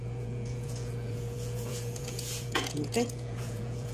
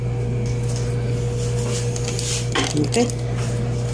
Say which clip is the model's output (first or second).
first